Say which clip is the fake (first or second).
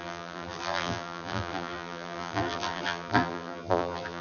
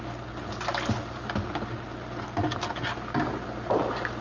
first